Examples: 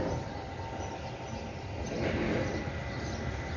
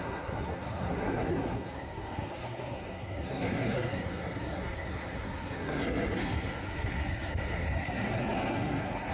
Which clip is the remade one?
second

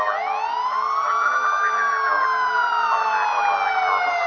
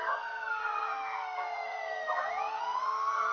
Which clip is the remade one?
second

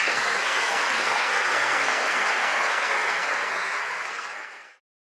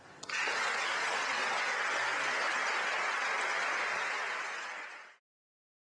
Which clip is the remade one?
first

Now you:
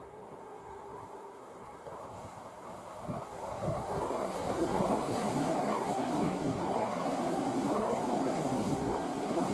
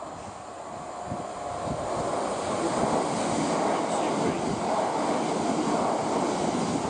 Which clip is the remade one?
first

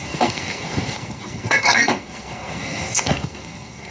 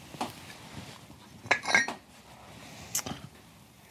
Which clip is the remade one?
first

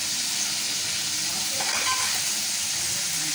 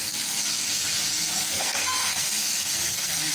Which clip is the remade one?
second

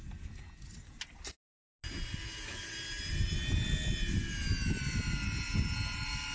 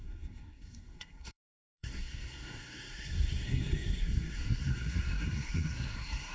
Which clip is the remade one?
second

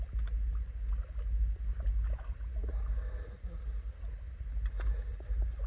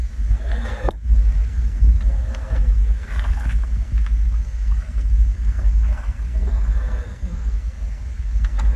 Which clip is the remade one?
second